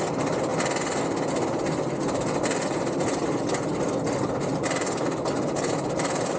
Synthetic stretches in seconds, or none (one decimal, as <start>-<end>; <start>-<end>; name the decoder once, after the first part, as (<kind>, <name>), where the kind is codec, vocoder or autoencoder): none